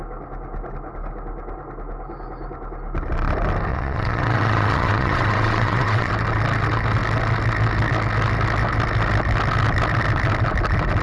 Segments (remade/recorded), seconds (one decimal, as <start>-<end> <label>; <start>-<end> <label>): 0.0-3.7 recorded; 3.7-6.1 remade; 6.1-11.0 recorded